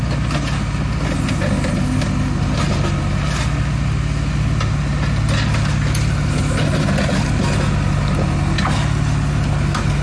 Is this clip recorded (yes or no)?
yes